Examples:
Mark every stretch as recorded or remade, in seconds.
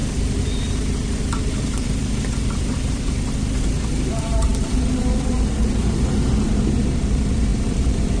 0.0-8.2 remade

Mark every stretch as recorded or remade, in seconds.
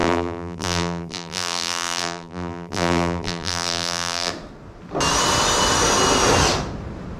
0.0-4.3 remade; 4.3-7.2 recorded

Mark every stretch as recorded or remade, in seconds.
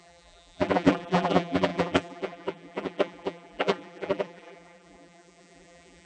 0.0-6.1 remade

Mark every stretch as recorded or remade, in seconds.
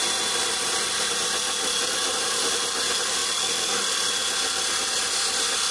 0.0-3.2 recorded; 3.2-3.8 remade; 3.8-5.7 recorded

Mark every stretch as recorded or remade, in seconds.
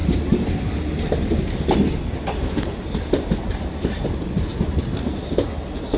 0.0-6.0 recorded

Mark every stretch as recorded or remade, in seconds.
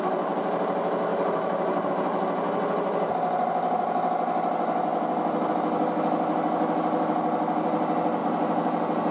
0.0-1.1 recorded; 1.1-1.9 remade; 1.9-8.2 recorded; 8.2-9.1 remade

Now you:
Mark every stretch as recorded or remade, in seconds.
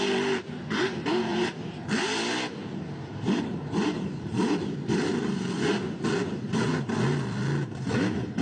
0.0-8.4 remade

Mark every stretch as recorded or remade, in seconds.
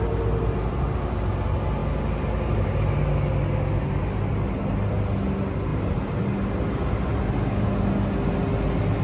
0.0-5.7 recorded; 5.7-6.2 remade; 6.2-9.0 recorded